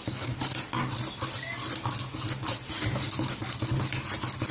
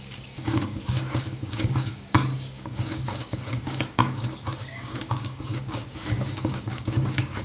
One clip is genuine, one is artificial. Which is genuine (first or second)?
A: first